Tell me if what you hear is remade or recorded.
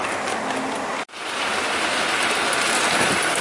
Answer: recorded